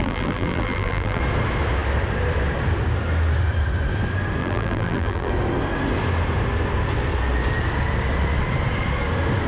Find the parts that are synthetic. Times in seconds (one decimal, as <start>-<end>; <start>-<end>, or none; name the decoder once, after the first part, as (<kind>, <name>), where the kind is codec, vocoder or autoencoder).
0.0-1.2 (vocoder, BigVGAN v2); 4.4-5.3